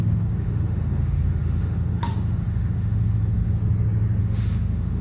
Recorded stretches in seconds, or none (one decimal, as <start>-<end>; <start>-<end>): 3.6-4.2